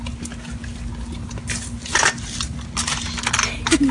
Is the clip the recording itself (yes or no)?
yes